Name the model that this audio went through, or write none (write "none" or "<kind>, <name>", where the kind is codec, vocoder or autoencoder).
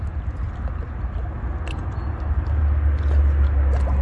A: none